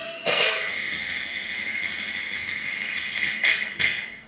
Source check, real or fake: fake